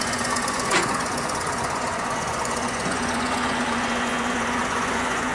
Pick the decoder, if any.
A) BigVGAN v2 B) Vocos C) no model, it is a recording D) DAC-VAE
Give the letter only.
B